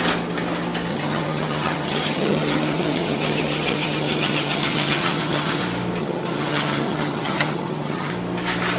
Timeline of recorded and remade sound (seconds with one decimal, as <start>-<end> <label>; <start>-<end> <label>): 0.0-0.9 recorded; 0.9-5.6 remade; 5.6-6.0 recorded; 6.0-8.1 remade; 8.1-8.8 recorded